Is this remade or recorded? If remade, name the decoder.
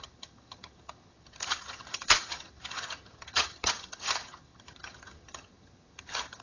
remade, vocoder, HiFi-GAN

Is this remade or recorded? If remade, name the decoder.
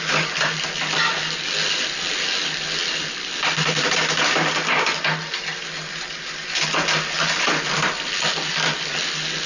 recorded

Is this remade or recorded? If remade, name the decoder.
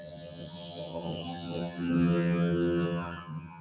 remade, vocoder, HiFi-GAN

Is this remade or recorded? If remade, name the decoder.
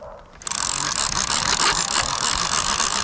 recorded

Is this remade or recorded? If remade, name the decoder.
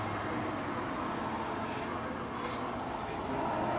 recorded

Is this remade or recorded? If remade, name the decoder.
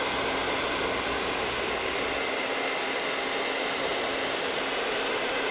recorded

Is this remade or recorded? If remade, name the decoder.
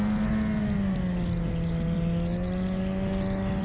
recorded